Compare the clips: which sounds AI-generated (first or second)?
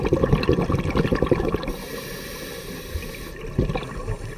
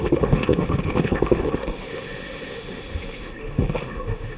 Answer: second